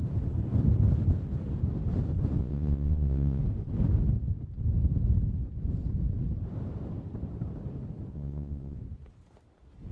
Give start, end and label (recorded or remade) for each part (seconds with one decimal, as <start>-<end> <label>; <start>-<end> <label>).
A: 0.0-2.4 recorded; 2.4-3.4 remade; 3.4-8.1 recorded; 8.1-8.8 remade; 8.8-9.9 recorded